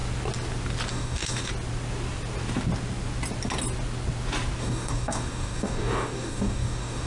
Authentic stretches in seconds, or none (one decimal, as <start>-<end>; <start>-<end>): 0.0-0.9; 1.5-4.6